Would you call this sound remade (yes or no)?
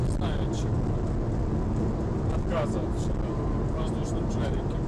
no